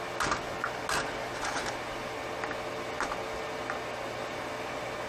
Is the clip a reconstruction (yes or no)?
no